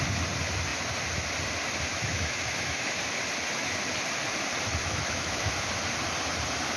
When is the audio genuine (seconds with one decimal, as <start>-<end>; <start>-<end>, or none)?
0.0-1.9; 3.0-4.8; 5.5-6.8

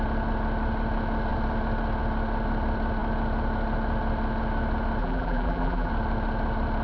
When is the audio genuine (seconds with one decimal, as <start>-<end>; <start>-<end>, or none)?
0.0-5.0; 5.9-6.8

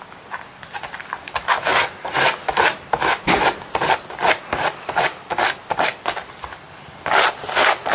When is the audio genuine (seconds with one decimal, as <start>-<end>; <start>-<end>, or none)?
0.0-7.9